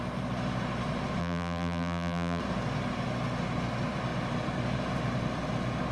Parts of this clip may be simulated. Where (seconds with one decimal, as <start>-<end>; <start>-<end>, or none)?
1.2-2.4